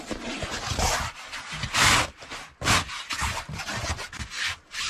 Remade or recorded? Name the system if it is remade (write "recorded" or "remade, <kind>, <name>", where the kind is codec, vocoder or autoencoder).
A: recorded